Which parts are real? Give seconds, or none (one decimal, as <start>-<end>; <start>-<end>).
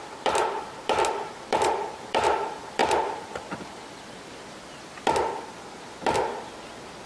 2.8-5.9